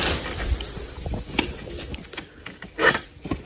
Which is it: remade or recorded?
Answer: recorded